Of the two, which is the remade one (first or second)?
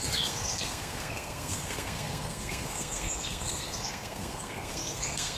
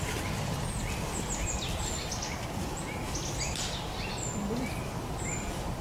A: first